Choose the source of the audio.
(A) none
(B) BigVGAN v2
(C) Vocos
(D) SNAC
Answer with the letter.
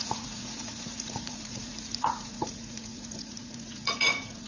C